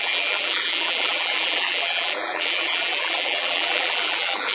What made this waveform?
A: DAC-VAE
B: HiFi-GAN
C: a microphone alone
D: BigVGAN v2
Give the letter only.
D